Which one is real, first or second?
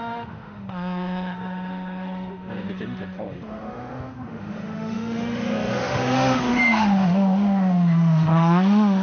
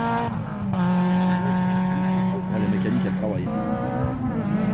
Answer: second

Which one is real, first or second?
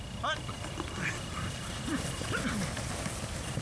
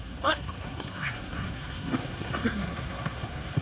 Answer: first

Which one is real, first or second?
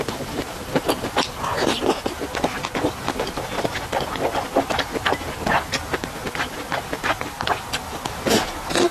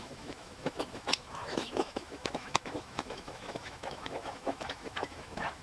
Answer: first